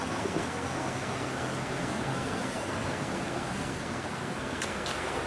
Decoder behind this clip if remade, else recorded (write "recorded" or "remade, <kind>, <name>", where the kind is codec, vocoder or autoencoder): remade, codec, SNAC